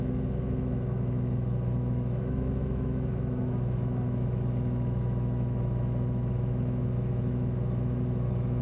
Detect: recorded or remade remade